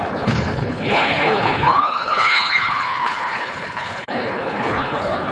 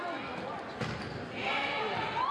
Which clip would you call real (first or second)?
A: second